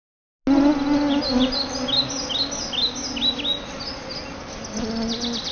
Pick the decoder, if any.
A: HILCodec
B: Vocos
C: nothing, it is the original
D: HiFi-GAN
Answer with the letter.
C